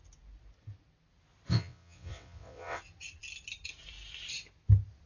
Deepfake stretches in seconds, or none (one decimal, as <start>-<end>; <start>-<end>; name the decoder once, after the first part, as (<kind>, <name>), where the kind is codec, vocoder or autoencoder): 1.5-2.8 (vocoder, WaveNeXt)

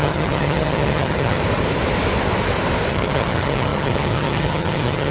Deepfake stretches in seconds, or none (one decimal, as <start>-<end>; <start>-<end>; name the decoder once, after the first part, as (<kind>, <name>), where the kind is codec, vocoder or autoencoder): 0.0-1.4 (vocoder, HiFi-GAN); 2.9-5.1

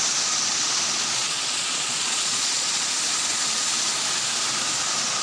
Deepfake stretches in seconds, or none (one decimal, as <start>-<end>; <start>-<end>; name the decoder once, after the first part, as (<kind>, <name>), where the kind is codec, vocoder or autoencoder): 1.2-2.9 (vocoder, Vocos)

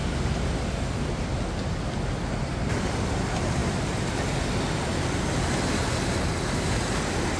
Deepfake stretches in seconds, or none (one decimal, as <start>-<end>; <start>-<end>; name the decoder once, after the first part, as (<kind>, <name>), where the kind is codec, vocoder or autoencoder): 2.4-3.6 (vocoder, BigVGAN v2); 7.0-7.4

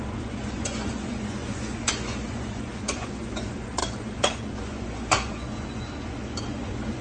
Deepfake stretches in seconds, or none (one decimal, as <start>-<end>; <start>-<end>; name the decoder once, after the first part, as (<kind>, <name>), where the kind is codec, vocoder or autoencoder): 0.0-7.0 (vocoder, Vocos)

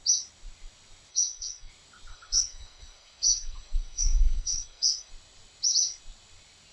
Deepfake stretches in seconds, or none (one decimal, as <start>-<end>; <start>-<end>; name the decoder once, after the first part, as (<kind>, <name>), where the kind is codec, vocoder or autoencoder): 1.1-1.7 (codec, SNAC); 2.1-5.1

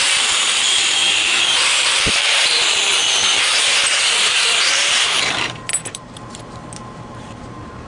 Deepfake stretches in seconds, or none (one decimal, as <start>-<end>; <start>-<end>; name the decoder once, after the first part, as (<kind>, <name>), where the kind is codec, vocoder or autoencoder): 0.0-2.8 (vocoder, BigVGAN v2); 4.2-7.9